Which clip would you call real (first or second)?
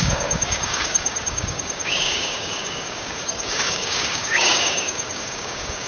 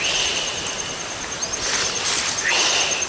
second